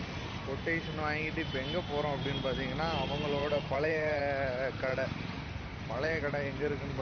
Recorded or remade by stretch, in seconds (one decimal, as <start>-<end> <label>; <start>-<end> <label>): 0.0-3.4 recorded; 3.4-4.2 remade; 4.2-4.9 recorded; 4.9-6.2 remade; 6.2-7.0 recorded

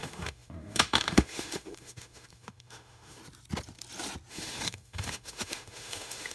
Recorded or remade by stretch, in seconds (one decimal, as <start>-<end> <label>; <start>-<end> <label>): 0.0-3.2 remade; 3.2-4.3 recorded; 4.3-6.3 remade

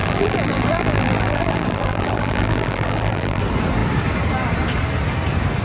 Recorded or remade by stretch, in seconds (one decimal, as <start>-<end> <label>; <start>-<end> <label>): 0.0-3.4 remade; 3.4-5.6 recorded

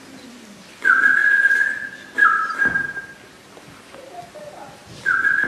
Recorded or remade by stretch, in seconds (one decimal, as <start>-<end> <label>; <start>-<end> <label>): 0.0-1.2 recorded; 1.2-4.2 remade; 4.2-5.5 recorded